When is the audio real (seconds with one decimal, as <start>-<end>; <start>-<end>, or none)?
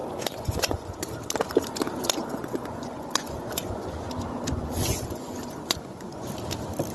1.0-2.2; 6.3-6.9